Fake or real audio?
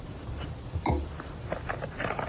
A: fake